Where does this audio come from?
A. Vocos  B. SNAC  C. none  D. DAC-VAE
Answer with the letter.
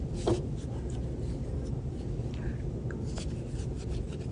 C